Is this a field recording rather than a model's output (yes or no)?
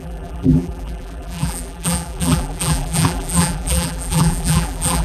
no